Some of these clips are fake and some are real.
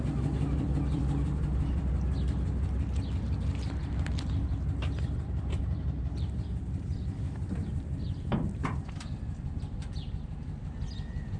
fake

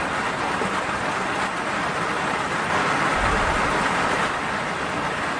real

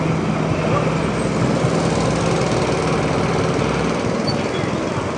real